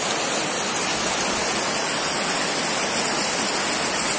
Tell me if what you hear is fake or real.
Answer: real